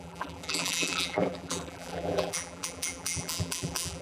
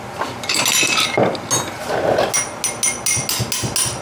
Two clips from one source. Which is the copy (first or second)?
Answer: first